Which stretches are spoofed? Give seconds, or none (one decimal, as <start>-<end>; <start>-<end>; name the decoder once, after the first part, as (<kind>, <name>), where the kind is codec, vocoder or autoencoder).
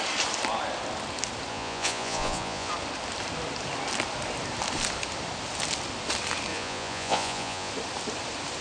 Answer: 1.5-2.7 (vocoder, Vocos); 6.5-7.7